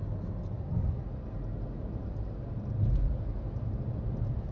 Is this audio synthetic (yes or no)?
no